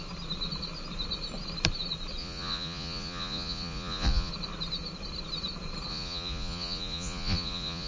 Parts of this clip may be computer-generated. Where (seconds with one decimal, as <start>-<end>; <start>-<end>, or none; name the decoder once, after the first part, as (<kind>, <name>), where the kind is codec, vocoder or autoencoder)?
2.2-4.3 (vocoder, Vocos); 5.9-7.9